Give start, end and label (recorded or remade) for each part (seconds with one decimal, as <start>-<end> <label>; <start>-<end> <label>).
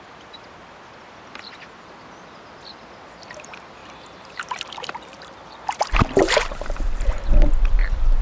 0.0-3.8 recorded; 3.8-8.2 remade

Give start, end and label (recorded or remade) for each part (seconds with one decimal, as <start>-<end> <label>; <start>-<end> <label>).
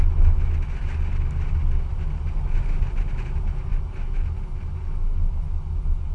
0.0-6.1 recorded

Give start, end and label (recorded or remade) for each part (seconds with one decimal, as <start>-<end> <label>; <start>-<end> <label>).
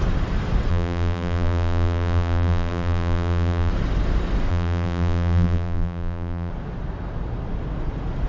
0.0-0.7 recorded; 0.7-3.7 remade; 3.7-4.5 recorded; 4.5-6.5 remade; 6.5-8.3 recorded